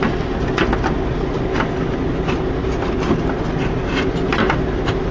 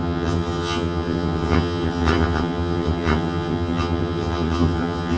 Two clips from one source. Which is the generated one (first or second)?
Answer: second